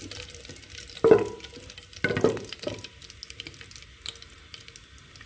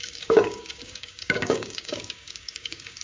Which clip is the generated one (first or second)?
second